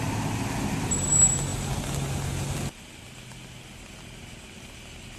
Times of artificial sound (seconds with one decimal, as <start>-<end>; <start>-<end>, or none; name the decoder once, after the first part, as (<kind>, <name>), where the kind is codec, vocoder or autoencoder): none